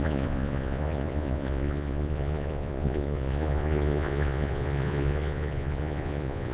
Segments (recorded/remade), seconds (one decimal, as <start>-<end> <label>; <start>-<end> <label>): 0.0-6.5 remade